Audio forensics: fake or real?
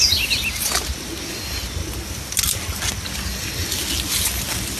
real